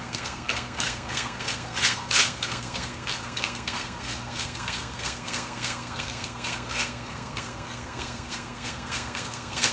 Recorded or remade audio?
remade